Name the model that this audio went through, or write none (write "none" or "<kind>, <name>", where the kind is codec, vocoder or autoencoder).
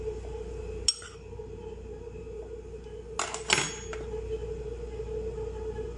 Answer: none